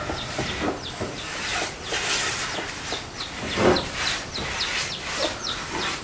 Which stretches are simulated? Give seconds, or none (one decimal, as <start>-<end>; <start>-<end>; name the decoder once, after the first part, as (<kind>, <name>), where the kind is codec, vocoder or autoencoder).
none